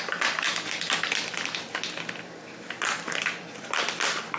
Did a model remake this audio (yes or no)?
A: yes